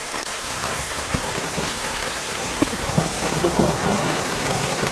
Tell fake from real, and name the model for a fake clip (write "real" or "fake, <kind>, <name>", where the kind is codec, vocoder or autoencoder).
fake, codec, SNAC